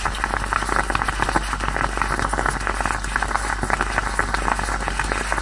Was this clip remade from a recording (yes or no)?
no